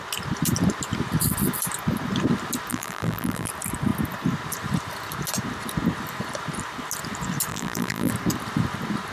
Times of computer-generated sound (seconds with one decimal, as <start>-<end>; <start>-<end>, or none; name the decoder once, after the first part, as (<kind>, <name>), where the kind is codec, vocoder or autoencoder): 2.7-3.5 (vocoder, BigVGAN v2); 7.5-8.1